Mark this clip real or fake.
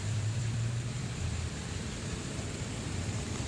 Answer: fake